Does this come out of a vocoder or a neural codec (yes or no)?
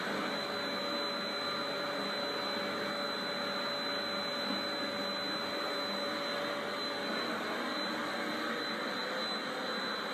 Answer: no